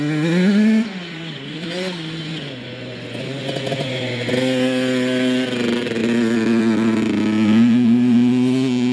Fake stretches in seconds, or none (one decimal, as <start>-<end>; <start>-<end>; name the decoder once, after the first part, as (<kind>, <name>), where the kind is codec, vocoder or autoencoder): 1.0-4.3 (vocoder, Vocos)